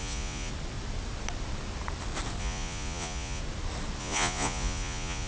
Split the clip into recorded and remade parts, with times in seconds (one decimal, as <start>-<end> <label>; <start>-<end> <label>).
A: 0.0-0.5 remade; 0.5-2.4 recorded; 2.4-3.4 remade; 3.4-4.0 recorded; 4.0-5.3 remade